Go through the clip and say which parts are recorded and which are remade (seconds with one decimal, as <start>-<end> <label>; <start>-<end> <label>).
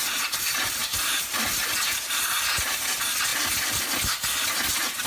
0.0-5.1 recorded